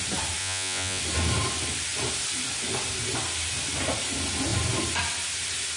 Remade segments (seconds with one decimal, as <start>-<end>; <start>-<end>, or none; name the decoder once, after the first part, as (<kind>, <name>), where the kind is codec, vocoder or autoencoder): 0.4-1.0 (vocoder, Vocos)